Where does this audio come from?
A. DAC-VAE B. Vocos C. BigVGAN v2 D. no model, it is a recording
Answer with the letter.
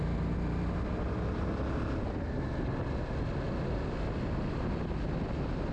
D